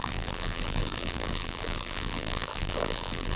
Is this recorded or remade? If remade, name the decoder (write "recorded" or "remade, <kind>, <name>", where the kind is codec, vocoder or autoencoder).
remade, vocoder, BigVGAN v2